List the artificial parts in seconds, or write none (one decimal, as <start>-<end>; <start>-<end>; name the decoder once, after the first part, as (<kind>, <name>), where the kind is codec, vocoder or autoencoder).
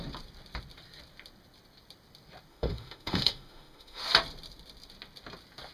2.5-4.0 (autoencoder, DAC-VAE)